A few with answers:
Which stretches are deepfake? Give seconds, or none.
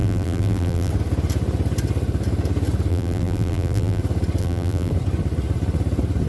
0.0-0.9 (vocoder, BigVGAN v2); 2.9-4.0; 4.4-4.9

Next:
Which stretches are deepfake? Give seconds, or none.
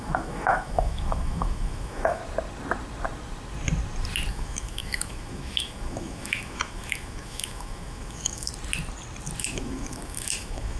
0.0-2.2 (autoencoder, DAC-VAE); 4.3-8.5; 9.4-10.8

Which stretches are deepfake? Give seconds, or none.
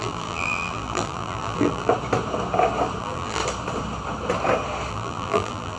0.0-1.9 (vocoder, BigVGAN v2); 3.0-3.4; 4.9-5.8